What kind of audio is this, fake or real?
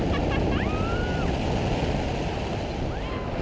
real